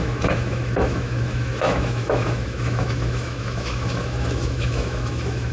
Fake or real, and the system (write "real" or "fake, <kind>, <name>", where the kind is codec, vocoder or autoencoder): fake, autoencoder, DAC-VAE